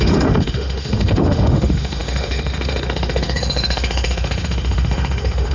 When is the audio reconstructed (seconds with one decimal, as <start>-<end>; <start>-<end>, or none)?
0.0-5.5